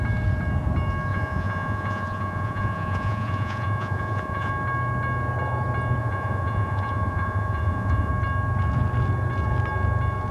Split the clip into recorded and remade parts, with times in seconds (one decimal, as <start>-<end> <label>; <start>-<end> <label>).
0.0-1.1 recorded; 1.1-4.5 remade; 4.5-6.0 recorded; 6.0-8.1 remade; 8.1-10.3 recorded